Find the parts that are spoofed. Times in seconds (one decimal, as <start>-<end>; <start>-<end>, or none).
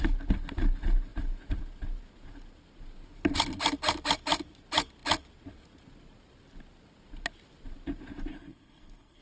8.3-9.2